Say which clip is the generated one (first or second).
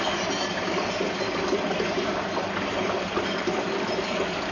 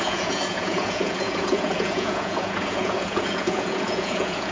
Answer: second